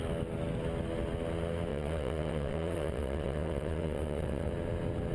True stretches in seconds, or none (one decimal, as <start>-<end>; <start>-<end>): 0.0-1.7; 4.5-5.1